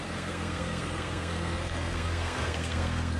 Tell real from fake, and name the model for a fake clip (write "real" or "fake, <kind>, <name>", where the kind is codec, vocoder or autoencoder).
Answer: fake, codec, SNAC